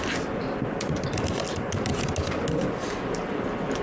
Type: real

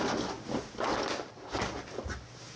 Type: real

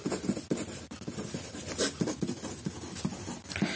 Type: real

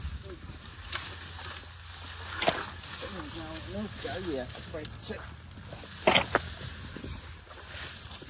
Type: real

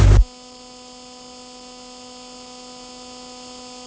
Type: real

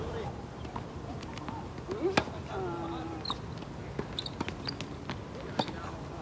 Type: real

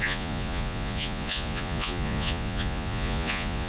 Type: fake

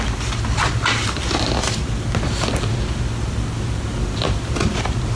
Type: real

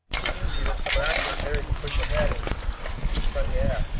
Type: real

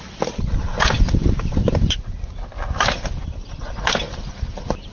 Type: real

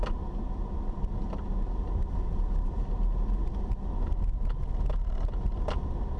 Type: real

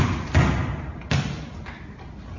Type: real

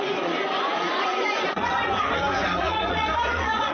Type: fake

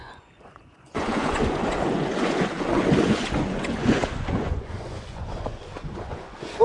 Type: fake